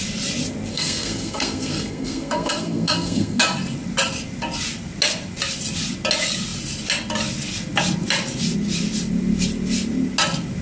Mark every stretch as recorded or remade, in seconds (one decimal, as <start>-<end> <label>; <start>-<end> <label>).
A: 0.0-0.7 recorded; 0.7-3.4 remade; 3.4-10.6 recorded